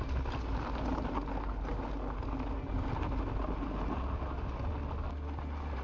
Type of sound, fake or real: real